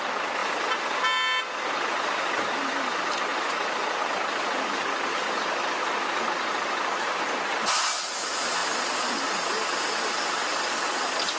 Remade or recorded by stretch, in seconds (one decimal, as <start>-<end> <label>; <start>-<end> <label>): 0.0-11.4 recorded

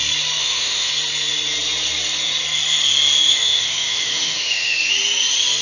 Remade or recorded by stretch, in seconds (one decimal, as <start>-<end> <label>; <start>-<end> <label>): 0.0-0.4 recorded; 0.4-0.9 remade; 0.9-3.2 recorded; 3.2-4.9 remade; 4.9-5.6 recorded